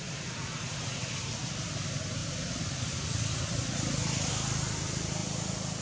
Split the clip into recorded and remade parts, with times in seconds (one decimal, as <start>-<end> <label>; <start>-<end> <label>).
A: 0.0-2.2 recorded; 2.2-4.3 remade; 4.3-5.8 recorded